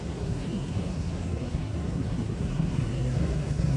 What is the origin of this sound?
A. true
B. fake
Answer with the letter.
B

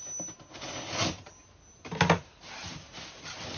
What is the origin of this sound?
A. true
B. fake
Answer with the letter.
A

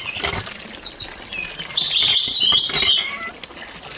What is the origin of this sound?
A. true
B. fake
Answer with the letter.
A